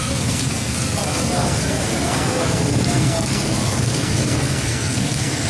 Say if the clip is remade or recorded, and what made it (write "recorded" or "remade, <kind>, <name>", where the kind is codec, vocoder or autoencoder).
remade, codec, SNAC